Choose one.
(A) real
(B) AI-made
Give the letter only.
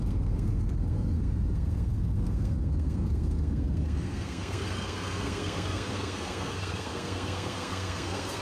B